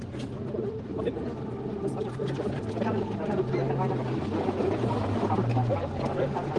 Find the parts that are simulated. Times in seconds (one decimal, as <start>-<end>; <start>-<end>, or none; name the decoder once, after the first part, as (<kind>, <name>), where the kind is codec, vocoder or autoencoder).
none